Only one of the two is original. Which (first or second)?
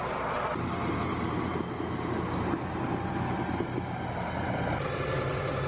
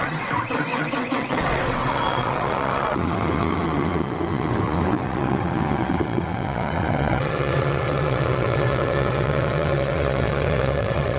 first